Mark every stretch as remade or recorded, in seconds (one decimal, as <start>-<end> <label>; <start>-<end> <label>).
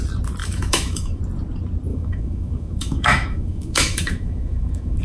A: 0.0-0.4 recorded; 0.4-1.2 remade; 1.2-1.9 recorded; 1.9-5.0 remade